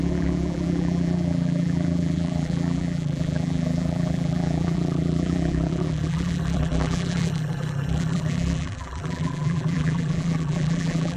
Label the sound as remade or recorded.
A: remade